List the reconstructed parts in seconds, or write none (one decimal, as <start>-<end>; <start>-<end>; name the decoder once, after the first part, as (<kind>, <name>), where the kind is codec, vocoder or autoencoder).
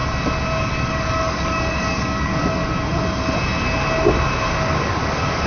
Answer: 0.6-2.6 (codec, DAC); 4.8-5.5